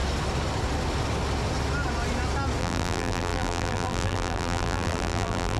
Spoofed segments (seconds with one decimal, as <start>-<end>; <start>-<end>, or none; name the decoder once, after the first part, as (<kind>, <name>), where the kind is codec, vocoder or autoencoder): 2.6-5.6 (vocoder, BigVGAN v2)